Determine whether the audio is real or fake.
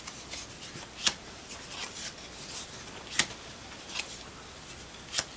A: real